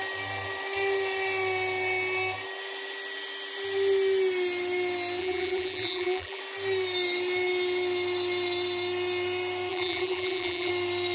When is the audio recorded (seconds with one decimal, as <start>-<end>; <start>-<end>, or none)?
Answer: 0.0-5.2; 6.4-9.7; 10.7-11.1